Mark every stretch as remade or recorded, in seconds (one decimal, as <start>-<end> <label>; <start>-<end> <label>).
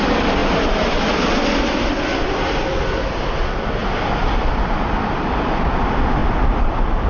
0.0-0.4 recorded; 0.4-1.3 remade; 1.3-3.8 recorded; 3.8-5.6 remade; 5.6-6.2 recorded; 6.2-7.1 remade